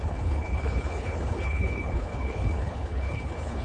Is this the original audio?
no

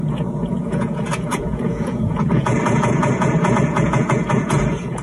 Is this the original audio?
no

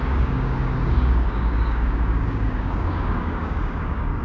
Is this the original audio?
no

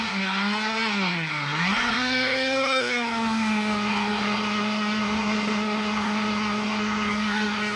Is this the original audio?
no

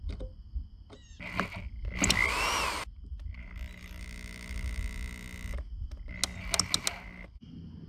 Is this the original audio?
yes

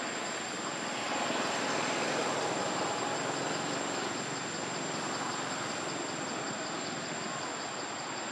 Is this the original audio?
yes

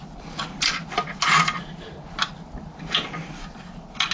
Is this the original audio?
yes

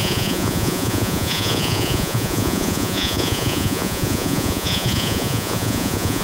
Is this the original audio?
no